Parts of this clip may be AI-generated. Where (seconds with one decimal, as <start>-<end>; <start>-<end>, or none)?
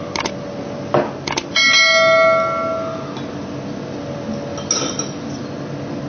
none